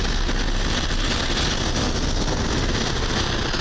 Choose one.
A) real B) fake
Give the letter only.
A